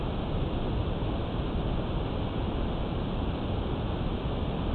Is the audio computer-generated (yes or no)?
no